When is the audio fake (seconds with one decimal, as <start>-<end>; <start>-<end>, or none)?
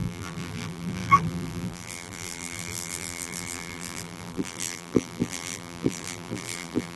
0.0-7.0